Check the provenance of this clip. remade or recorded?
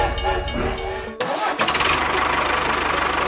recorded